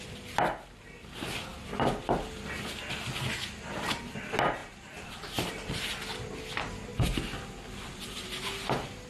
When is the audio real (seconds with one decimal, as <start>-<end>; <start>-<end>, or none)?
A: 0.0-9.1